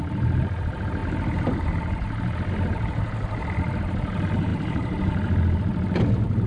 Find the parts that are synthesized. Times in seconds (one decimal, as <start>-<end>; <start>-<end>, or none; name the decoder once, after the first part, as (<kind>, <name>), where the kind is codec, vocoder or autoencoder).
0.0-1.0 (vocoder, BigVGAN v2); 2.5-6.5